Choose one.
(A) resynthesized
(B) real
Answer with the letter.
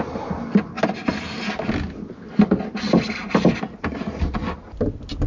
B